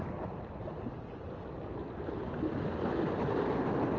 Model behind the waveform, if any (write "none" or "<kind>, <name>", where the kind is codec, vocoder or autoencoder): none